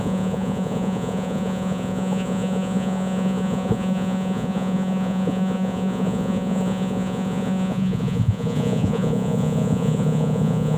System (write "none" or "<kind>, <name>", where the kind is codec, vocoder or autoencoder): vocoder, Vocos